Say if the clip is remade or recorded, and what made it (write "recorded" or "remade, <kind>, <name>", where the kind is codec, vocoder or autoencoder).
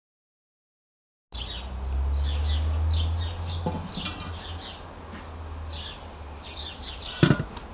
recorded